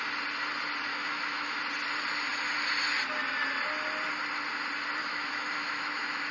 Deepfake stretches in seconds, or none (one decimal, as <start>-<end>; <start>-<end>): 0.9-1.6; 5.0-6.3